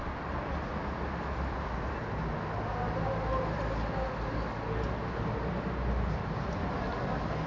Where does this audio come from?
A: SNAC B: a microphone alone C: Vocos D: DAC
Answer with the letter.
B